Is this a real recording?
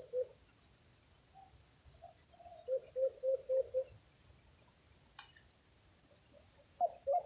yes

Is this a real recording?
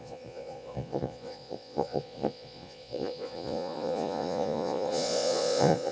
no